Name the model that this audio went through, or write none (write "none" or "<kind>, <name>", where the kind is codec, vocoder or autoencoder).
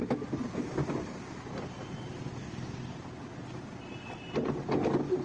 none